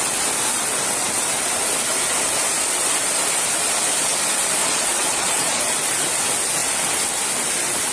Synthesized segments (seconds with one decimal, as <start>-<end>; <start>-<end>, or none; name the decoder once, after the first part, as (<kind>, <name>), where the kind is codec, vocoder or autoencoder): 4.6-5.6 (vocoder, Vocos)